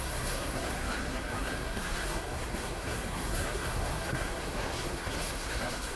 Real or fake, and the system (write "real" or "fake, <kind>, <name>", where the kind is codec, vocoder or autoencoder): fake, codec, SNAC